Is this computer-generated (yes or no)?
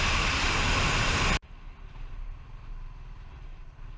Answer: no